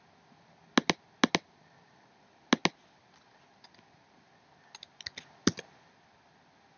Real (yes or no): yes